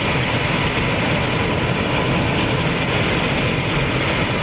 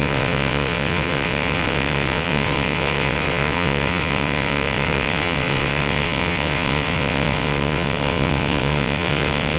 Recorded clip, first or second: first